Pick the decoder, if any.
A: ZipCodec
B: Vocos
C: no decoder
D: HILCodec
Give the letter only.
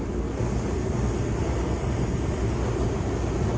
C